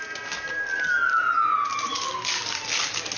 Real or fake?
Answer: real